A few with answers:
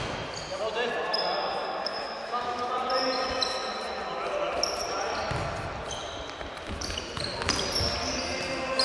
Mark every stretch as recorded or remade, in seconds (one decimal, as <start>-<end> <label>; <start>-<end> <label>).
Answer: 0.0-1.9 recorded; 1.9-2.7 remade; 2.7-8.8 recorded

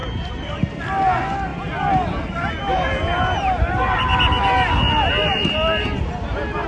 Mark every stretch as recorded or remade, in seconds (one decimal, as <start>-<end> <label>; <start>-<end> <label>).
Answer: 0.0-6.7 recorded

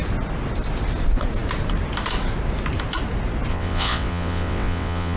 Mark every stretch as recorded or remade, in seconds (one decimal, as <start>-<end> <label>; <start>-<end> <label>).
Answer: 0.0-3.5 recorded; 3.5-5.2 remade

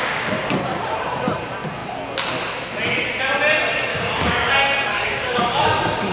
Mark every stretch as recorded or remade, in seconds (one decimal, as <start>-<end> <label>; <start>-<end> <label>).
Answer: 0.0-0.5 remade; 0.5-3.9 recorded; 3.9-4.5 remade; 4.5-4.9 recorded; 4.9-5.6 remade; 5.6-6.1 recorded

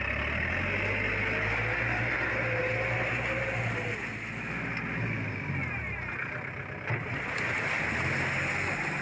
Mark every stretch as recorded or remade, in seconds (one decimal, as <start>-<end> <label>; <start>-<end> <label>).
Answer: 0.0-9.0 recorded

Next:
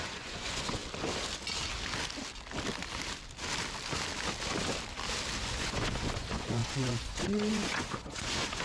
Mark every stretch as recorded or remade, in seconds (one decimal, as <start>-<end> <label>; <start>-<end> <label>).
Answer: 0.0-0.8 remade; 0.8-5.4 recorded; 5.4-8.6 remade

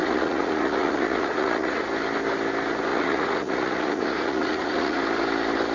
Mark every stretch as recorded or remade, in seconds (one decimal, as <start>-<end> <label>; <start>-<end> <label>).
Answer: 0.0-1.8 remade; 1.8-2.9 recorded; 2.9-5.0 remade; 5.0-5.7 recorded

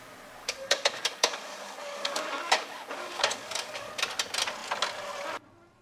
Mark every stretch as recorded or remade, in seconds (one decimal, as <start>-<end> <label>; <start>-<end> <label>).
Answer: 0.0-0.4 recorded; 0.4-3.9 remade; 3.9-5.8 recorded